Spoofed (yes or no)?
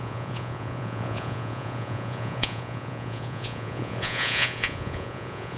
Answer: yes